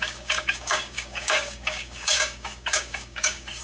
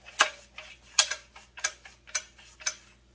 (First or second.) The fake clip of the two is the first